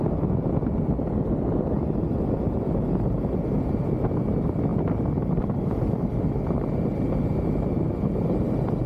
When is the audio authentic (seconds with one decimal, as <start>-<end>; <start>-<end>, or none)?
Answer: 0.0-8.9